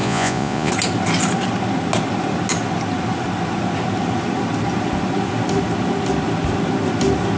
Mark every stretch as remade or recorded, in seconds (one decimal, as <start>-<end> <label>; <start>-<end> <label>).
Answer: 0.0-0.7 remade; 0.7-7.4 recorded